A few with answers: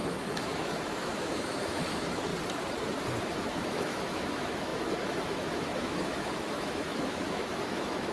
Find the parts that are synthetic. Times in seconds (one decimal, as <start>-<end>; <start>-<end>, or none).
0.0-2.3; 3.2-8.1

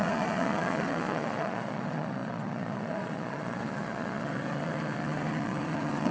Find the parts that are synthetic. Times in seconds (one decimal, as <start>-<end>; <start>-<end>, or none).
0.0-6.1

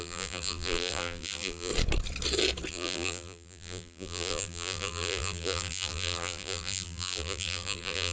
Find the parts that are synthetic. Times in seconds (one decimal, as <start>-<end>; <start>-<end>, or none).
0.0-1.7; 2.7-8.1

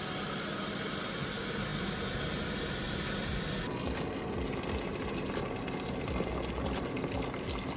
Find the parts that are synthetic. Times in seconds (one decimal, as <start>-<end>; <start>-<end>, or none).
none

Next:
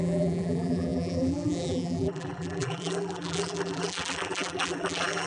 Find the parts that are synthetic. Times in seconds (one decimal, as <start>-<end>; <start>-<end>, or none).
0.0-5.3

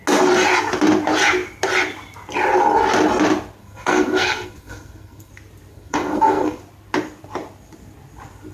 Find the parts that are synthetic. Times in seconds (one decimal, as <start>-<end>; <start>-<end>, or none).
3.6-5.3; 5.7-6.6

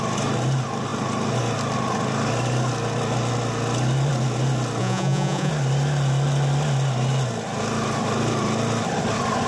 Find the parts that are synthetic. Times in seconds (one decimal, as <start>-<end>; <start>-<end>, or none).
4.8-5.5

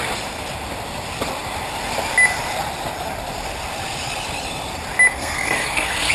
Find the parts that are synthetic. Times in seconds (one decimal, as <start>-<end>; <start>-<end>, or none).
5.1-6.1